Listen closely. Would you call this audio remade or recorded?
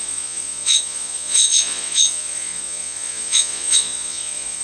remade